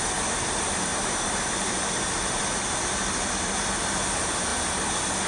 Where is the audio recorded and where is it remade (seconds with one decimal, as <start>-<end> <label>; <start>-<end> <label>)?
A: 0.0-4.5 remade; 4.5-5.3 recorded